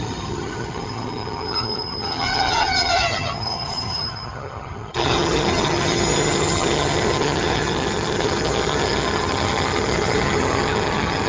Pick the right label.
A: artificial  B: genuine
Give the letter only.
A